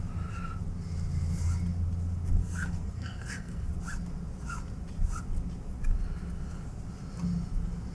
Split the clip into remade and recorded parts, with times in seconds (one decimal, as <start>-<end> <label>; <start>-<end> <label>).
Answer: 0.0-2.4 recorded; 2.4-3.7 remade; 3.7-7.9 recorded